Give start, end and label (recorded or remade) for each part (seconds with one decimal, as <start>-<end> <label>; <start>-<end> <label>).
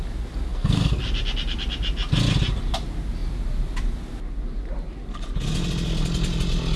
0.0-0.5 recorded; 0.5-1.0 remade; 1.0-6.8 recorded